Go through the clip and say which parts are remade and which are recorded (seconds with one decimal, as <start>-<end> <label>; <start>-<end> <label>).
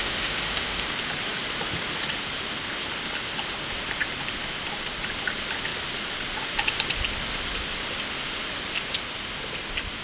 0.0-0.9 remade; 0.9-10.0 recorded